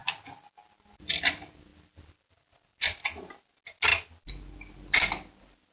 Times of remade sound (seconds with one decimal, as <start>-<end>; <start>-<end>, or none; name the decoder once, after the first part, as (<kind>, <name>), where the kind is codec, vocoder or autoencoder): none